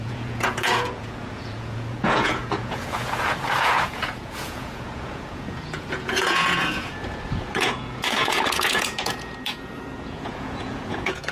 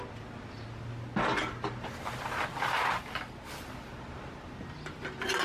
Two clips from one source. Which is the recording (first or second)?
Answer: second